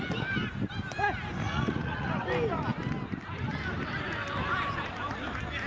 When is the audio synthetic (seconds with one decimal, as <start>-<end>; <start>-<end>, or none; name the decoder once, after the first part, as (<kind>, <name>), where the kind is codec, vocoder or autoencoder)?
1.4-2.1 (vocoder, Vocos)